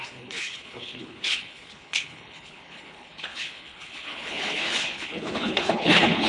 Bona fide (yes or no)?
no